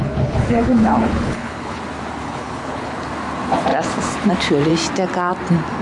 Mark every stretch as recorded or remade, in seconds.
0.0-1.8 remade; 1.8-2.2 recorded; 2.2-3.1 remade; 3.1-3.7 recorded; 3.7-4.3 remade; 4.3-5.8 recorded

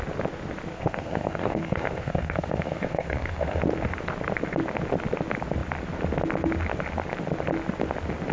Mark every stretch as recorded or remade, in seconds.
0.0-0.7 recorded; 0.7-3.6 remade; 3.6-8.3 recorded

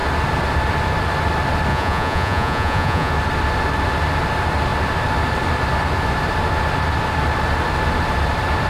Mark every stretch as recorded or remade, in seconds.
0.0-1.7 recorded; 1.7-3.1 remade; 3.1-8.7 recorded

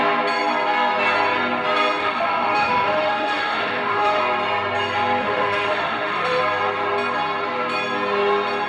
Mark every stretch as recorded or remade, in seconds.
0.0-2.0 recorded; 2.0-4.2 remade; 4.2-5.2 recorded; 5.2-6.4 remade; 6.4-8.7 recorded

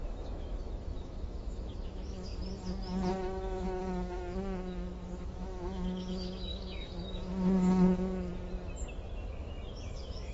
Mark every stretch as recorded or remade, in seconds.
0.0-2.3 remade; 2.3-3.1 recorded; 3.1-8.3 remade; 8.3-9.4 recorded; 9.4-10.3 remade

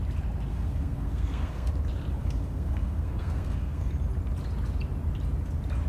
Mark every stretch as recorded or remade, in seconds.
0.0-0.5 recorded; 0.5-1.7 remade; 1.7-2.2 recorded; 2.2-3.9 remade; 3.9-5.9 recorded

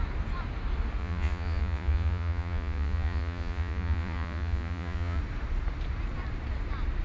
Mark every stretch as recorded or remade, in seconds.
0.0-1.0 recorded; 1.0-5.2 remade; 5.2-7.0 recorded

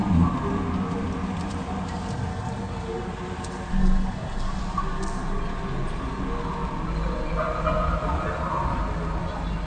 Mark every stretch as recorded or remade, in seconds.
0.0-2.3 recorded; 2.3-3.1 remade; 3.1-3.8 recorded; 3.8-4.6 remade; 4.6-9.7 recorded